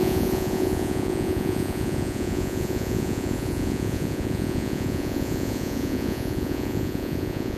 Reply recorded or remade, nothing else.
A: remade